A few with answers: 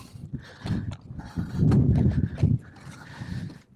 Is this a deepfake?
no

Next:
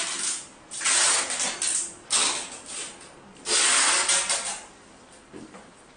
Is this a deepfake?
no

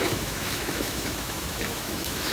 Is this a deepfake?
yes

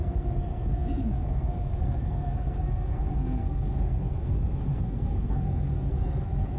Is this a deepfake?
yes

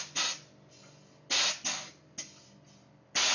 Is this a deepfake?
no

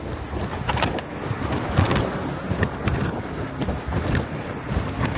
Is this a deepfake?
no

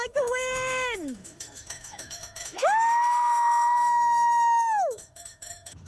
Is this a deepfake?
yes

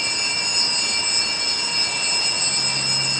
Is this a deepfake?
no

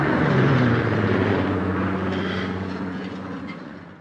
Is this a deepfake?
yes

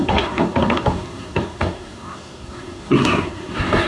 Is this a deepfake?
yes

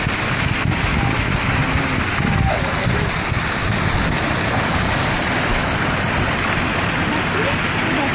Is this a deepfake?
no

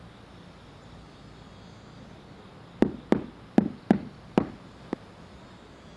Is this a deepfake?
no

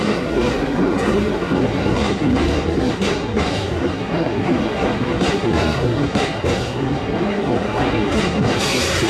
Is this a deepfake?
yes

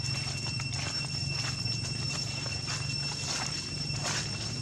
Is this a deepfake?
no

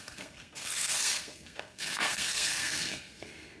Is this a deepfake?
yes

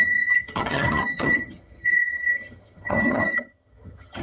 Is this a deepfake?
yes